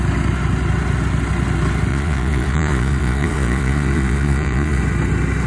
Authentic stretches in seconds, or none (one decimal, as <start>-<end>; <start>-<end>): 0.0-1.9; 4.8-5.5